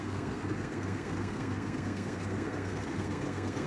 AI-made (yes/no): yes